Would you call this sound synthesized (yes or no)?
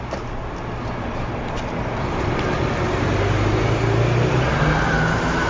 no